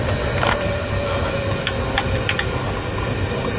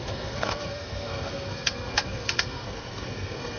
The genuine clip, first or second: first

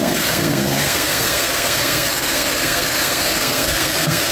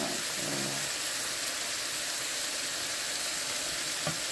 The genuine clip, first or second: second